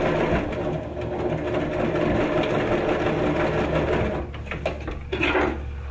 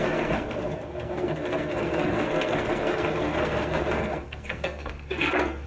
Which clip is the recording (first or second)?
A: first